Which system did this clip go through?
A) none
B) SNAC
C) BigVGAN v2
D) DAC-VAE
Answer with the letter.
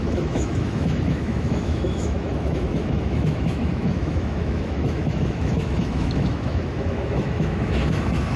D